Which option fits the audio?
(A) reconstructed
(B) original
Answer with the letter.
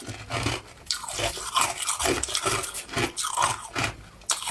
B